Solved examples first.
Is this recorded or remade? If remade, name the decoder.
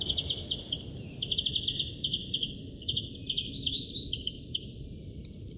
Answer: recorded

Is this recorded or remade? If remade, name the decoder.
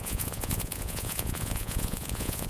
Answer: remade, vocoder, Vocos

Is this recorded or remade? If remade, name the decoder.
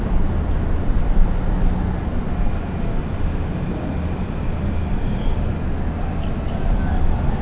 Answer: recorded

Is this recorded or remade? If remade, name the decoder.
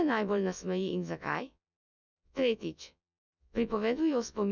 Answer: remade, vocoder, Vocos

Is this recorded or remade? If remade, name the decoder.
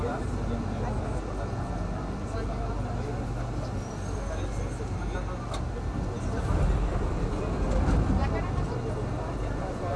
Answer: recorded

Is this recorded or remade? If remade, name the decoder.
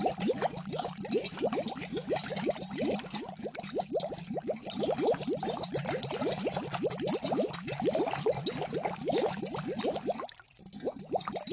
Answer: recorded